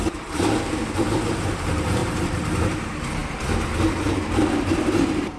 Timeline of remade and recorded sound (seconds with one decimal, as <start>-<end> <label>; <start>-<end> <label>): 0.0-3.2 remade; 3.2-4.0 recorded; 4.0-5.4 remade